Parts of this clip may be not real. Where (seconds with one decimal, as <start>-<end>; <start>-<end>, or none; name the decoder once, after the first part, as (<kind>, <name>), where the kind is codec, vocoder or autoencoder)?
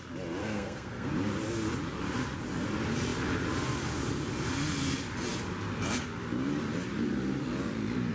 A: 0.4-1.1 (codec, SNAC)